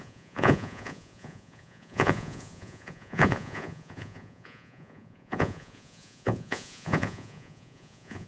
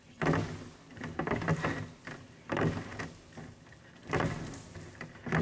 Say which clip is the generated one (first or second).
first